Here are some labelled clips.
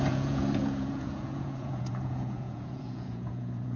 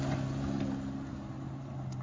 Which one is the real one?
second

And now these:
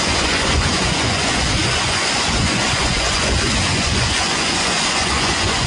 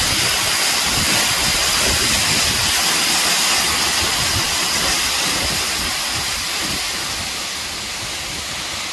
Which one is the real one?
second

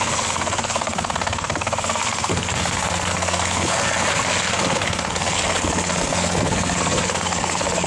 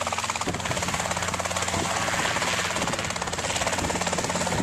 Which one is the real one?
second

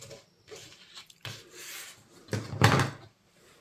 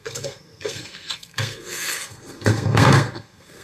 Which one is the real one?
first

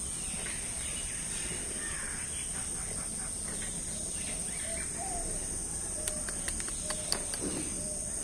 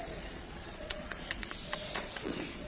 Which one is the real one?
first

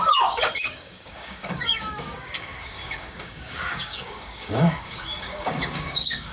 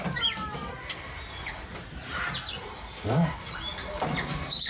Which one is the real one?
second